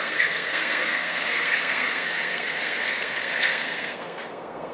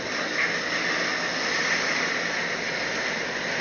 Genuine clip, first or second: second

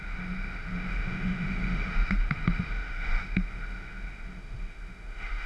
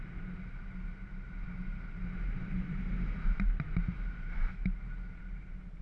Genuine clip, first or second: second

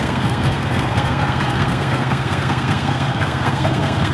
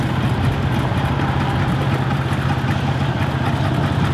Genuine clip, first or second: second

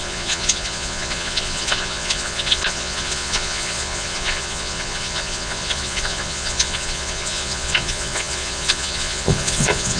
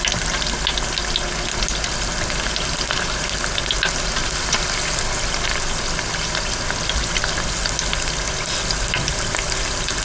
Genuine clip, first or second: second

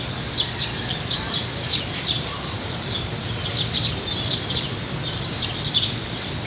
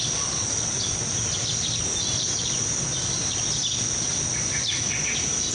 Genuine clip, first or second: second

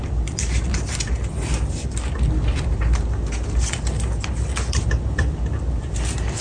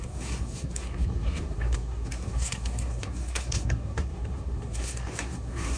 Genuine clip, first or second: first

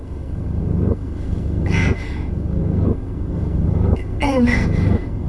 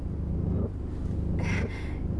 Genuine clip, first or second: second